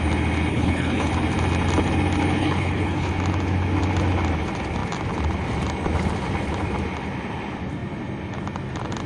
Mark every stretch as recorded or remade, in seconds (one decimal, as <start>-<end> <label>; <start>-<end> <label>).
0.0-0.5 recorded; 0.5-1.1 remade; 1.1-2.4 recorded; 2.4-3.1 remade; 3.1-9.1 recorded